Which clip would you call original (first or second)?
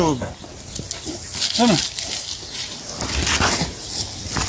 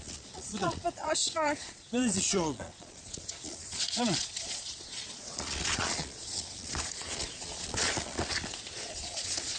first